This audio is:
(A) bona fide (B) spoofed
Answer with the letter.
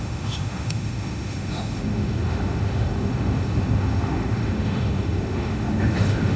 B